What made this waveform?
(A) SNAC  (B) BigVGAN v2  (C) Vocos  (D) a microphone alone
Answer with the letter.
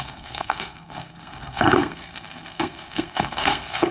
A